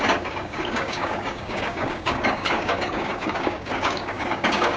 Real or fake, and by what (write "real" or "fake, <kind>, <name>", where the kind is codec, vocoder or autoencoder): fake, codec, DAC